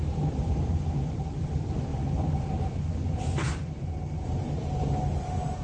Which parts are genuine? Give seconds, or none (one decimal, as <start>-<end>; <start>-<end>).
0.0-5.6